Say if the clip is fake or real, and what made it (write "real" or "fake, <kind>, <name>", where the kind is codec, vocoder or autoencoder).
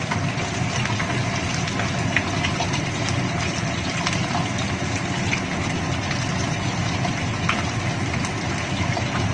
real